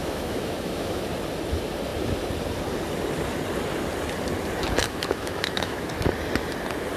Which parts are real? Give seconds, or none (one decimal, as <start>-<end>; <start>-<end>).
1.0-4.8; 5.9-7.0